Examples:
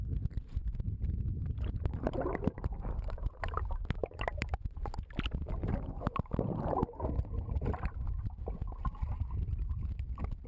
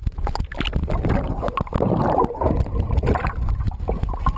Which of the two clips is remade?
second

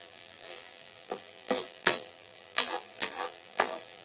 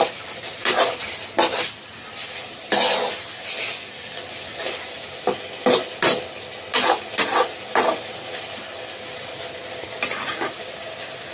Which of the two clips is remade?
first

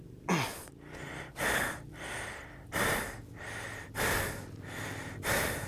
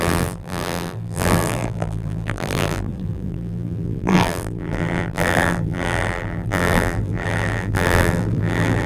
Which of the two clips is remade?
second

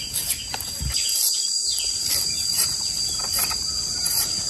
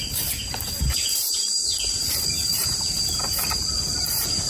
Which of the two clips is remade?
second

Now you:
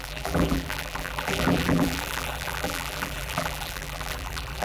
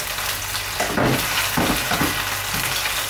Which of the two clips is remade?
first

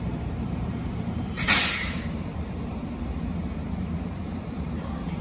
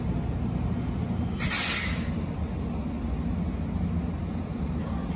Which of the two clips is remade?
first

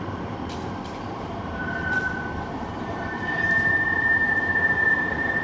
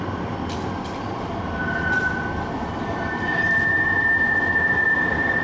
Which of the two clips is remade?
first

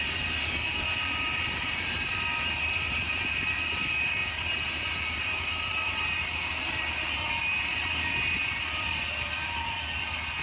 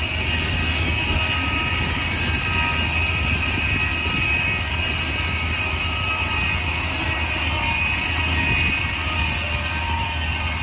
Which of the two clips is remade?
first